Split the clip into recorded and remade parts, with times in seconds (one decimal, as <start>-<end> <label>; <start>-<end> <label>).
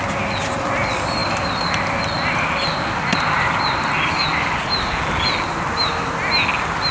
0.0-6.9 recorded